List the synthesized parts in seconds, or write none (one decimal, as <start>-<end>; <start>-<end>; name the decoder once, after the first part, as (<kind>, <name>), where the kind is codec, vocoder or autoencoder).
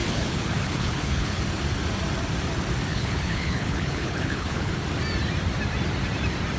0.0-1.4 (codec, HILCodec); 2.9-4.7